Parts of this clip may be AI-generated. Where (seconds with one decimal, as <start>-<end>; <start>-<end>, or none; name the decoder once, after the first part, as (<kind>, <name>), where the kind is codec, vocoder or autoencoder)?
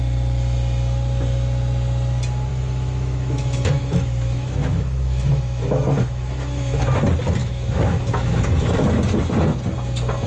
2.5-6.8 (autoencoder, DAC-VAE); 7.4-8.9